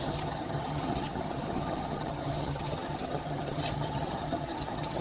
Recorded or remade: remade